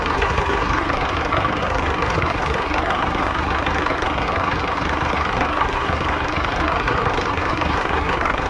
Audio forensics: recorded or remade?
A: remade